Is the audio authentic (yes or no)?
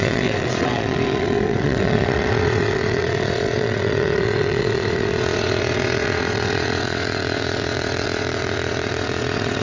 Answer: no